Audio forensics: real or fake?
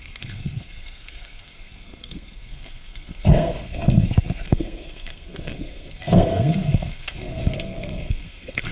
fake